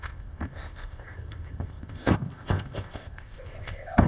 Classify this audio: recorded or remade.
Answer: remade